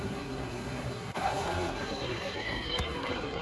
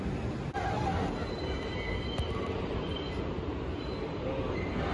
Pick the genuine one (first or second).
second